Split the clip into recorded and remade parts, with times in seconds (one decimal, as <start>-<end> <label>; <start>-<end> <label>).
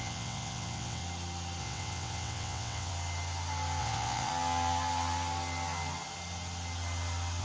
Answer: 0.0-1.0 remade; 1.0-1.6 recorded; 1.6-2.9 remade; 2.9-3.8 recorded; 3.8-4.3 remade; 4.3-7.4 recorded